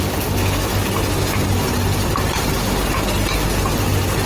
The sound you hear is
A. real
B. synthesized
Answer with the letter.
A